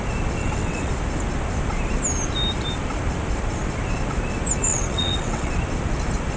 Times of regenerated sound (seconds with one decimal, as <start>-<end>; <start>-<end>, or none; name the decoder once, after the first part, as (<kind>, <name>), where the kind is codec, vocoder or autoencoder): 0.4-0.9 (vocoder, WaveNeXt); 4.7-5.5